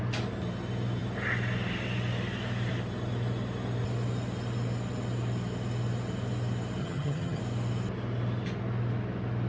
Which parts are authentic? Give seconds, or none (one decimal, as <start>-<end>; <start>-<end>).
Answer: 0.0-6.8; 7.4-9.5